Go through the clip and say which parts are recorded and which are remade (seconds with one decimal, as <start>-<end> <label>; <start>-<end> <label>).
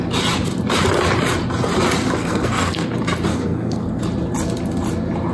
0.0-2.2 recorded; 2.2-2.9 remade; 2.9-3.3 recorded; 3.3-4.0 remade; 4.0-5.3 recorded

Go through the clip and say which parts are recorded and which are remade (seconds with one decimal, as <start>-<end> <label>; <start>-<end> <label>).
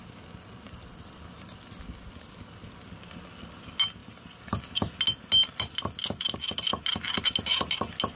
0.0-8.2 recorded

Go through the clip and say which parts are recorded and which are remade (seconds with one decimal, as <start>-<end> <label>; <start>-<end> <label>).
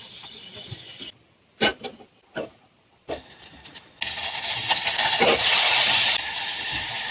0.0-1.7 recorded; 1.7-3.7 remade; 3.7-5.3 recorded; 5.3-6.1 remade; 6.1-7.1 recorded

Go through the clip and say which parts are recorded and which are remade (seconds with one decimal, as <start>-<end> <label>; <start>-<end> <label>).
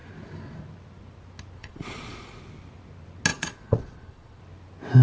0.0-1.6 recorded; 1.6-2.4 remade; 2.4-3.3 recorded; 3.3-4.4 remade; 4.4-5.0 recorded